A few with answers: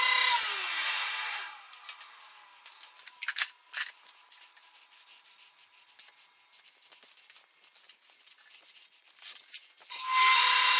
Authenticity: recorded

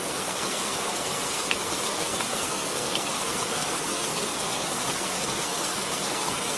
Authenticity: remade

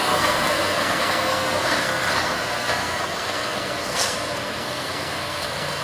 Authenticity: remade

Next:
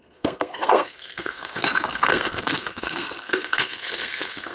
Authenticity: remade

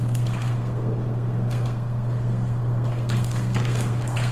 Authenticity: remade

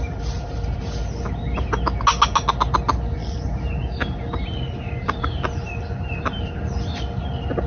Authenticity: recorded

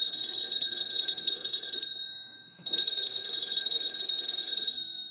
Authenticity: remade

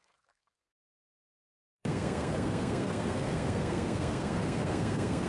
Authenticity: remade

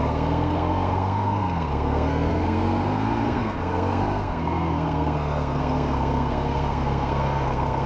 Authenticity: remade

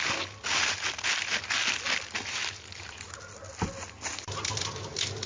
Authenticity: recorded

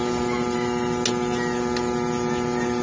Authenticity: recorded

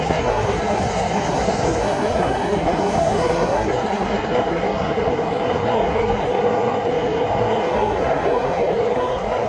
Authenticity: remade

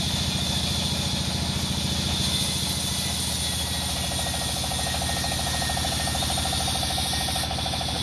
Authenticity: recorded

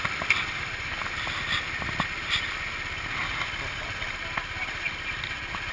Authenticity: recorded